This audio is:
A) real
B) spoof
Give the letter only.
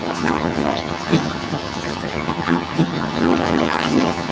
B